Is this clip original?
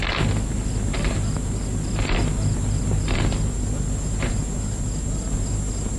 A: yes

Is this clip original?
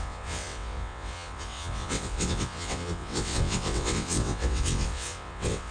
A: no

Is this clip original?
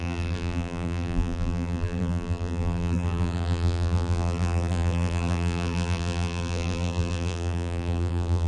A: no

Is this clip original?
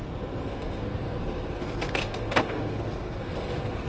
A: no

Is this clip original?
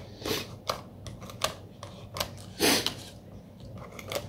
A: yes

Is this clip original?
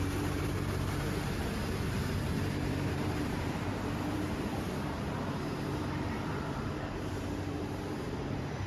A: no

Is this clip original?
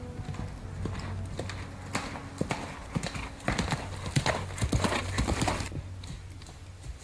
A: yes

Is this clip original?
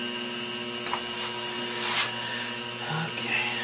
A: yes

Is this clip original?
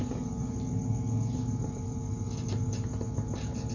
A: yes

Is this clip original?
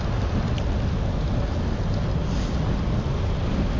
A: yes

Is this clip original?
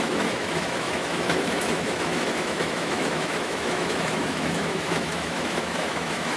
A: no